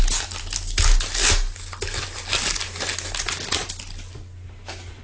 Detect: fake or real real